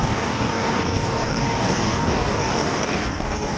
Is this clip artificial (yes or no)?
yes